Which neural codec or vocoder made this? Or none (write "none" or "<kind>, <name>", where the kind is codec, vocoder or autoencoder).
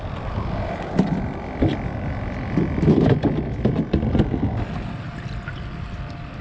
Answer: none